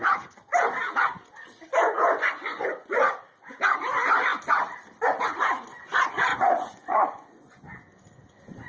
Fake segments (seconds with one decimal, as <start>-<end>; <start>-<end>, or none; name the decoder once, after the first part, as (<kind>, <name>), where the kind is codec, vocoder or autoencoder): 1.7-3.0 (vocoder, Vocos); 6.3-7.6